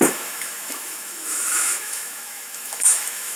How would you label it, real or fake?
fake